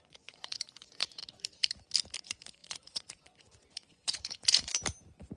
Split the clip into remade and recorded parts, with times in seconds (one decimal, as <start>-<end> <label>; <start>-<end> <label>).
0.0-1.2 remade; 1.2-2.2 recorded; 2.2-4.7 remade; 4.7-5.4 recorded